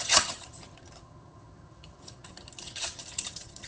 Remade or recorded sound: remade